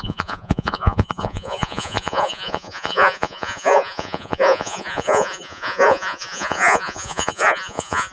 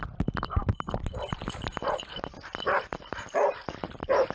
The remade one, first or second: first